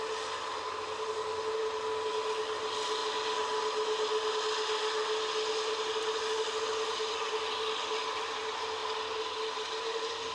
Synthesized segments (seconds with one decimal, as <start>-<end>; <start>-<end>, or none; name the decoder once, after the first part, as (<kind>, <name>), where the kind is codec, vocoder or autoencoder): none